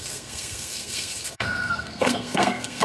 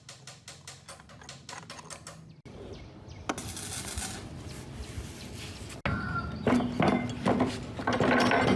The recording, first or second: second